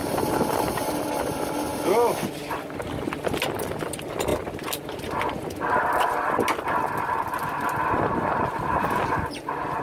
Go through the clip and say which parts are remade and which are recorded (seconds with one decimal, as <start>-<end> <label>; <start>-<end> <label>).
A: 0.0-1.0 remade; 1.0-9.8 recorded